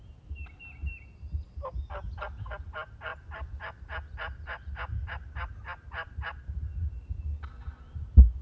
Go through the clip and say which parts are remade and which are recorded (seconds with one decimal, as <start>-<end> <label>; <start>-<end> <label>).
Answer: 0.0-8.4 recorded